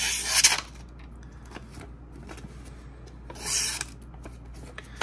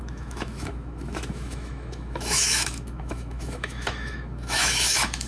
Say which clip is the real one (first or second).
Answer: first